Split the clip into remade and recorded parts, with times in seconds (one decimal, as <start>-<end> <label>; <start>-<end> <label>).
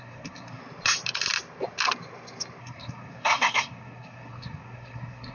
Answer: 0.0-0.6 remade; 0.6-2.6 recorded; 2.6-5.3 remade